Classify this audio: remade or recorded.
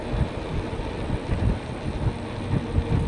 recorded